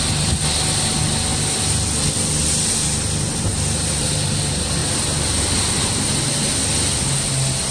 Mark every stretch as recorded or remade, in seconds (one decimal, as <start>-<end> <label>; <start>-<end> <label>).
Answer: 0.0-1.3 recorded; 1.3-2.1 remade; 2.1-4.8 recorded; 4.8-5.7 remade; 5.7-7.7 recorded